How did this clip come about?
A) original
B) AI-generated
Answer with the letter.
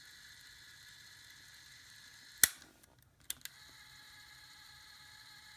A